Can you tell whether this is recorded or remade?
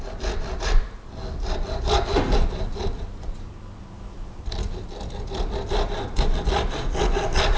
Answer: recorded